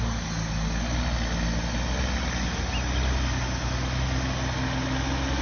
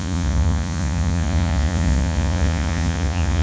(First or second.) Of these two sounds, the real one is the first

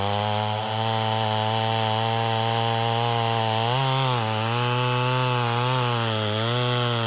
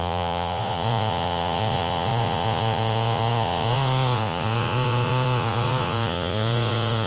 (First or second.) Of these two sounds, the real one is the first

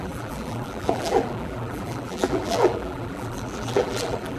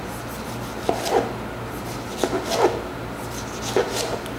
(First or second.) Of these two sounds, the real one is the second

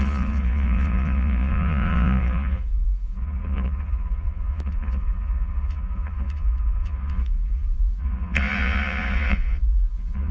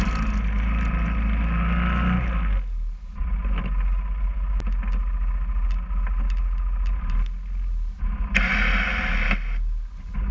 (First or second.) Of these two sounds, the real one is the second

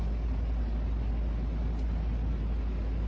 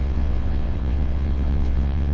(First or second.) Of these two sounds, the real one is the first